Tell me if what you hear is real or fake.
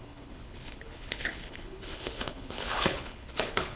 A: fake